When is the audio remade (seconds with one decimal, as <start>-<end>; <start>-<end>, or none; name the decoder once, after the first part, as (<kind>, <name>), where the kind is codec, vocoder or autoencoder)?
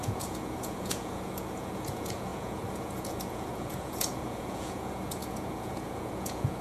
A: 0.0-6.6 (vocoder, Vocos)